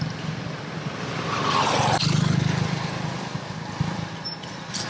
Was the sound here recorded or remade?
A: recorded